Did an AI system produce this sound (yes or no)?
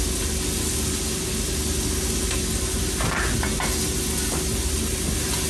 no